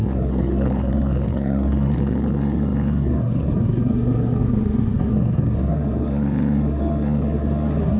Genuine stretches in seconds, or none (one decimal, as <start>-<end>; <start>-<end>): none